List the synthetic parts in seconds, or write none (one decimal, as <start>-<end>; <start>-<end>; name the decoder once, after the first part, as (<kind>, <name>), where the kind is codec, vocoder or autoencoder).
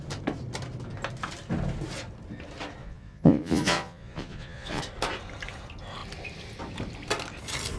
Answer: 2.8-4.8 (vocoder, Vocos)